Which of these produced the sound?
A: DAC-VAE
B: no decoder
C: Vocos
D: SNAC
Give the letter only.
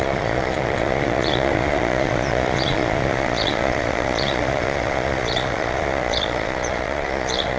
C